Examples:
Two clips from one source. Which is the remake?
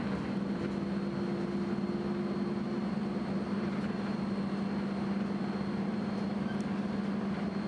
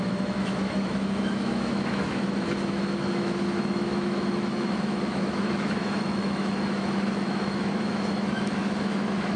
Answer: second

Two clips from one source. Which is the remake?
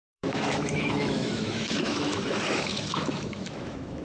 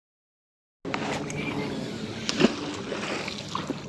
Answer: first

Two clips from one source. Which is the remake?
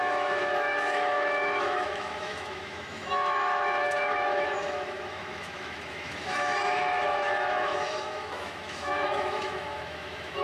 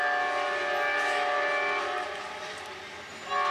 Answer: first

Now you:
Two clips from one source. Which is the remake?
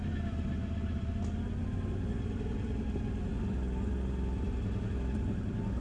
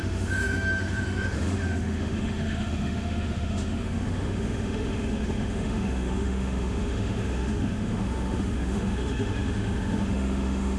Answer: second